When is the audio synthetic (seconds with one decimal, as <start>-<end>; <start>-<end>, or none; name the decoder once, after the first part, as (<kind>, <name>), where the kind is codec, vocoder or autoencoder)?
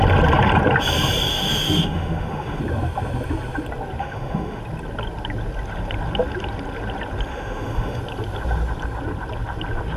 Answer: 1.3-2.6 (autoencoder, DAC-VAE); 4.0-4.6; 7.3-8.0